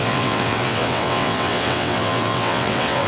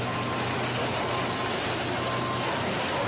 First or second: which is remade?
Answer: first